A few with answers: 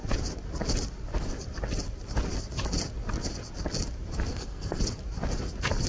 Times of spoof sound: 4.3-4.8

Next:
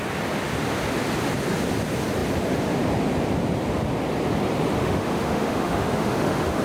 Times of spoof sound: 4.8-6.6

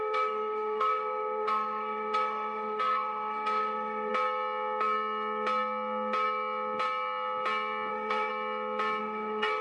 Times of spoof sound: 0.0-4.1; 7.9-8.3; 9.0-9.6